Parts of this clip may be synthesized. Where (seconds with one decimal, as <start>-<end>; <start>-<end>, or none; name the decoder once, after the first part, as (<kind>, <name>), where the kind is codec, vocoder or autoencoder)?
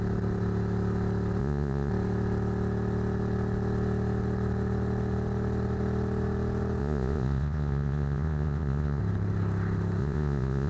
1.4-1.9 (vocoder, Vocos); 6.8-9.0; 10.0-10.7